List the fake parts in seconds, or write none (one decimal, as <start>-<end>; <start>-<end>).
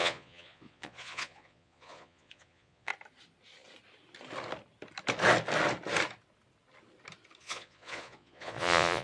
0.0-2.9; 7.4-9.0